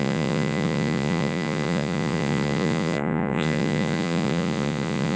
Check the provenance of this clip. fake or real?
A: fake